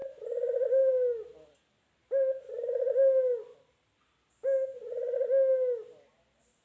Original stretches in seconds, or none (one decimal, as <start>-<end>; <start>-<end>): 0.0-6.6